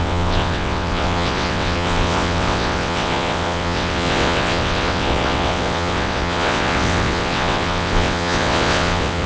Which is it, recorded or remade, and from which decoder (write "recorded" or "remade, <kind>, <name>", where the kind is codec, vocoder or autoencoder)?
remade, vocoder, WaveNeXt